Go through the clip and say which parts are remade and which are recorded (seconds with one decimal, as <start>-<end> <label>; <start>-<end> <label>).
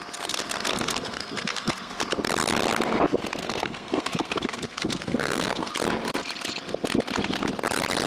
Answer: 0.0-0.7 recorded; 0.7-2.0 remade; 2.0-3.4 recorded; 3.4-5.7 remade; 5.7-8.1 recorded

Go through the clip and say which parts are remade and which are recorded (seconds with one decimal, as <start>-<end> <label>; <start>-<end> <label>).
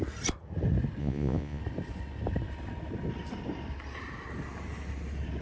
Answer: 0.0-1.0 recorded; 1.0-1.6 remade; 1.6-5.4 recorded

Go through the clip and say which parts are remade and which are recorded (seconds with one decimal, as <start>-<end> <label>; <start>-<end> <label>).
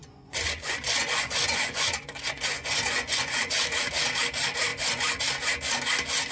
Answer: 0.0-3.8 remade; 3.8-4.7 recorded; 4.7-5.2 remade; 5.2-6.3 recorded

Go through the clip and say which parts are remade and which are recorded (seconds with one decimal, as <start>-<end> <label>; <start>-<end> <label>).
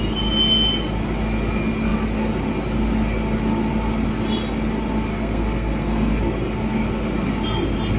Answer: 0.0-5.1 recorded; 5.1-6.2 remade; 6.2-8.0 recorded